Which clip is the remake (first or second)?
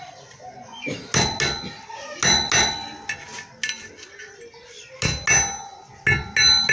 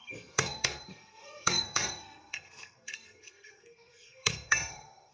second